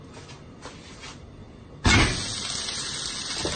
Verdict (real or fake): real